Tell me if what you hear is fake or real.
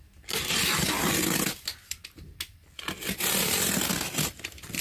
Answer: real